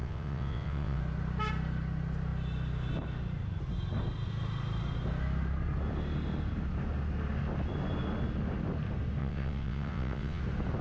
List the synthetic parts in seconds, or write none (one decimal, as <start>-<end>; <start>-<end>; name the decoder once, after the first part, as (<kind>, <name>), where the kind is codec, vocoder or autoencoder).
0.0-1.0 (vocoder, WaveNeXt); 9.2-10.4